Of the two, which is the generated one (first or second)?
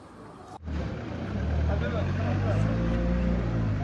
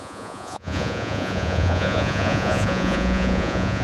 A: second